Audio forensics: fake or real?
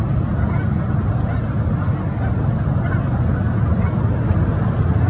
real